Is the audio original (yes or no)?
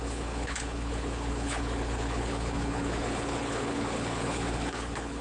no